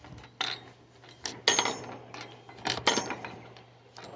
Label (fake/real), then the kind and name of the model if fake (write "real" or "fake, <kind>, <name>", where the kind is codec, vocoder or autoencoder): real